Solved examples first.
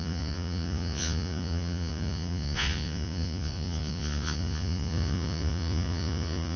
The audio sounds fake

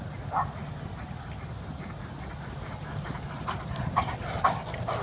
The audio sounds real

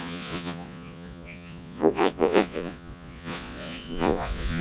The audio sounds fake